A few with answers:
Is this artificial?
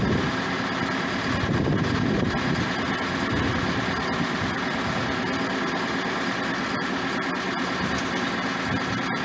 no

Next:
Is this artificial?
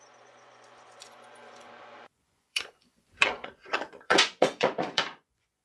yes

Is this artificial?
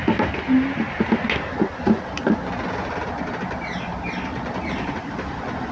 no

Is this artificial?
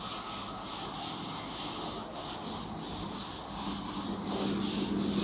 no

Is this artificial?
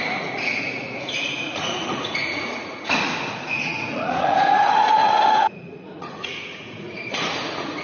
yes